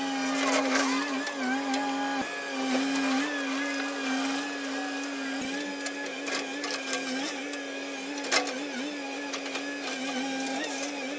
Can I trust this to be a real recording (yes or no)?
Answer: yes